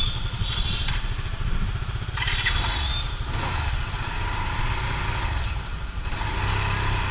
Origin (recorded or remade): recorded